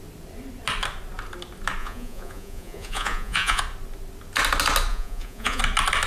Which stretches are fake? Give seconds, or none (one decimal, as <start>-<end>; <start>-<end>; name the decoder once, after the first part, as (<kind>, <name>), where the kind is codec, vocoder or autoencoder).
1.8-3.6 (vocoder, Vocos); 4.9-5.6